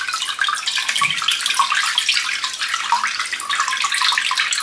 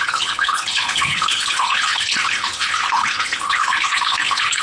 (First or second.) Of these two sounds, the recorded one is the first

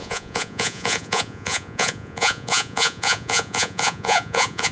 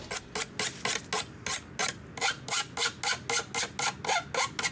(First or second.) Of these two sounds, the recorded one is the second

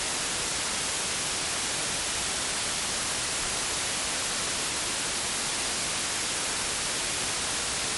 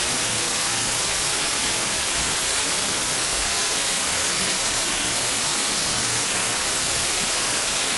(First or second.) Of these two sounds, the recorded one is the first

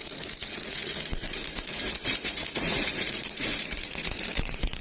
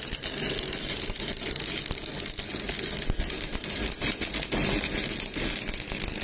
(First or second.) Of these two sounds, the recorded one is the second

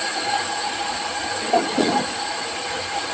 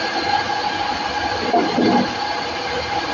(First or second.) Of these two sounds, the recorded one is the second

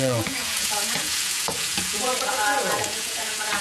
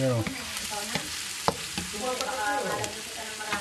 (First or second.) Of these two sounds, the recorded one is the second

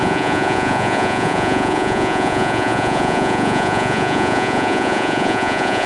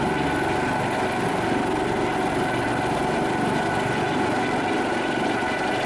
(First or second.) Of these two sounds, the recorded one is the second